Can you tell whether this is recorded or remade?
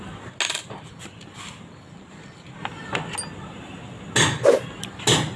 recorded